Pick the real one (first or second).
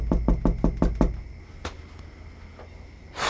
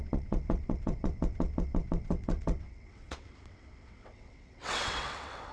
first